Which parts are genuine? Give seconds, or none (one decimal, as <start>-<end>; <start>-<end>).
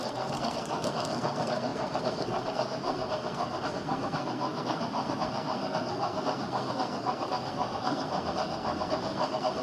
none